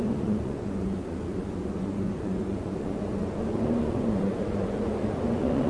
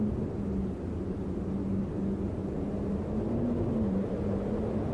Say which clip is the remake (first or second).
first